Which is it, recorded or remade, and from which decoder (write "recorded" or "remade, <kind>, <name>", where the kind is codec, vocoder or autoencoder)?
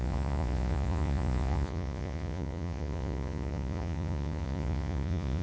remade, vocoder, Vocos